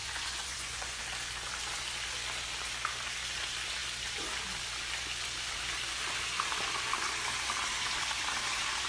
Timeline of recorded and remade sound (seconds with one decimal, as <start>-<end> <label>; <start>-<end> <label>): 0.0-1.0 remade; 1.0-8.9 recorded